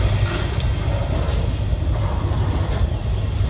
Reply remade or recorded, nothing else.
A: recorded